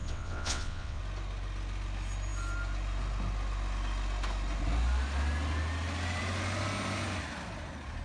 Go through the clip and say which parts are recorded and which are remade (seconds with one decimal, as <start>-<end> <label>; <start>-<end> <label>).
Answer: 0.0-1.0 remade; 1.0-8.0 recorded